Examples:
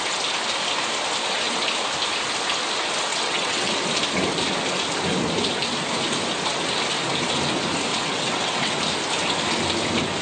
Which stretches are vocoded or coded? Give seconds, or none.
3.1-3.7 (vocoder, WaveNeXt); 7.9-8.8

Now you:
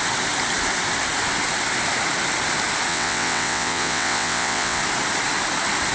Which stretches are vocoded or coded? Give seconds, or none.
2.9-4.8 (vocoder, WaveNeXt)

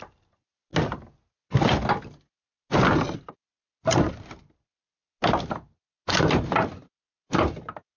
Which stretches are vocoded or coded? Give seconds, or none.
none

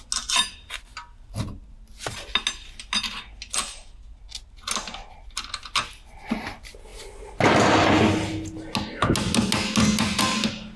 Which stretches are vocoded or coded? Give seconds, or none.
none

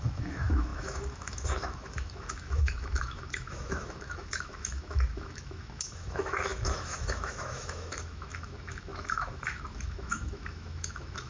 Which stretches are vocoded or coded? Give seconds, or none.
0.0-11.3 (autoencoder, DAC-VAE)